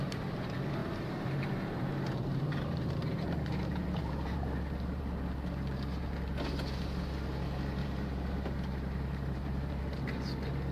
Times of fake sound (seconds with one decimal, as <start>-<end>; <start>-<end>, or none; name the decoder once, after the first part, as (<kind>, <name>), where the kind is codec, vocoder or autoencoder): 0.8-5.0 (vocoder, BigVGAN v2); 7.8-9.8